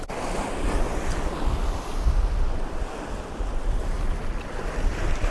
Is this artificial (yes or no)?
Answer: no